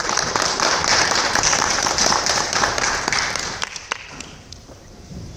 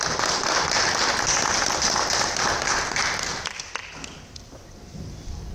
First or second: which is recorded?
second